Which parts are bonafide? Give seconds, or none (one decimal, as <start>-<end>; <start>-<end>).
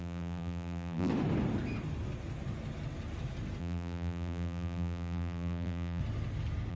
1.1-3.6; 6.0-6.7